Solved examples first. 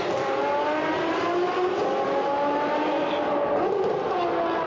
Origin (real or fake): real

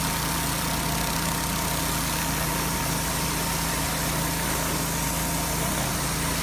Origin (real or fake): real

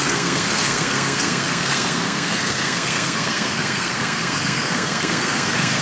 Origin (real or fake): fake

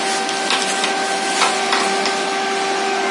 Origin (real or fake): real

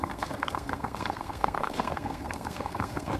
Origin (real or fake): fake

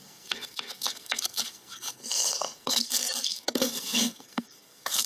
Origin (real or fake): fake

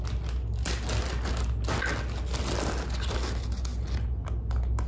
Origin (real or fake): real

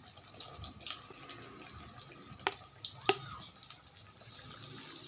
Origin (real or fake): real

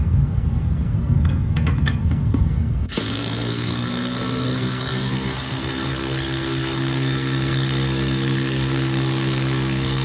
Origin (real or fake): fake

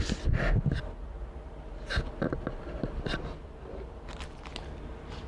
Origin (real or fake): real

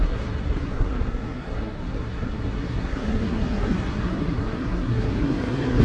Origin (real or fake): fake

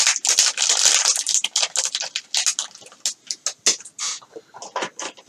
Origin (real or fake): real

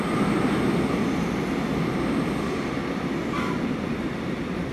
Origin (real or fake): real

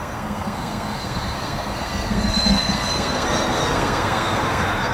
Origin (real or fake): fake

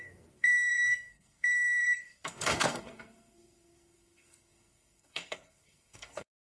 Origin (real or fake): fake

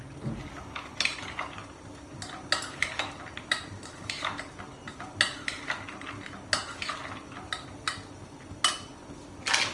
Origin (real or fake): real